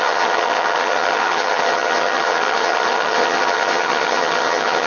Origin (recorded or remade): remade